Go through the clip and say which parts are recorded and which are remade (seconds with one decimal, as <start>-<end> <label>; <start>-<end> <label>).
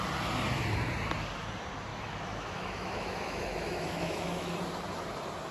0.0-1.9 recorded; 1.9-4.5 remade; 4.5-5.5 recorded